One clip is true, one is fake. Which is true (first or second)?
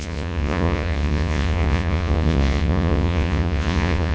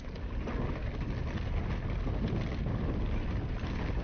second